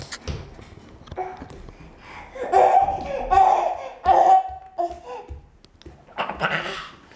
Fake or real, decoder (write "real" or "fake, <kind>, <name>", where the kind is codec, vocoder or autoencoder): real